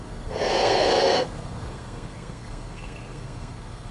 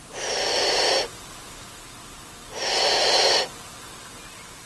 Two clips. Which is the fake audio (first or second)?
first